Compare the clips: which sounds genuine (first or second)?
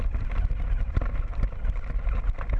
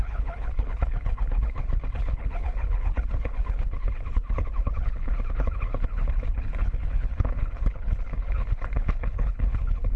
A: first